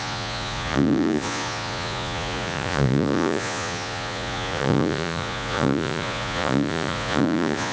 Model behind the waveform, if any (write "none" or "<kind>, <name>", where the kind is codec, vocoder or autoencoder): vocoder, Vocos